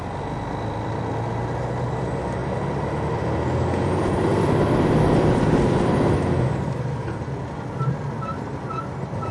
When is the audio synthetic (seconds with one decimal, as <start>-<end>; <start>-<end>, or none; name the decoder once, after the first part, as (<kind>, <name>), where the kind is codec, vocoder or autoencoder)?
none